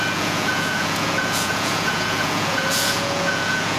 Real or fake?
fake